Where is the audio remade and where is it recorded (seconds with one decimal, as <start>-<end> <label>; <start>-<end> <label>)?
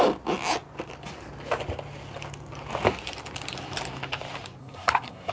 0.0-4.6 recorded; 4.6-5.3 remade